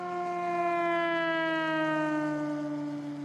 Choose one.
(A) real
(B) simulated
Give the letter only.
A